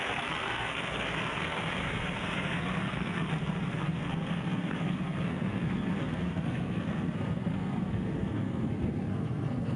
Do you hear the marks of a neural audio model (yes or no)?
yes